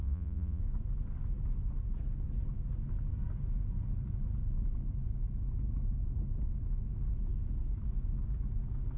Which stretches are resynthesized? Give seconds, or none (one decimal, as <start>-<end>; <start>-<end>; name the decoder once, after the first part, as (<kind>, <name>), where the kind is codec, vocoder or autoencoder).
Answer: 0.0-0.6 (vocoder, Vocos)